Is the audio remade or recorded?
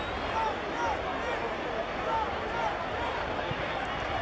recorded